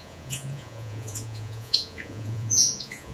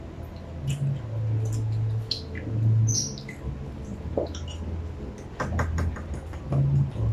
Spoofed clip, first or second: first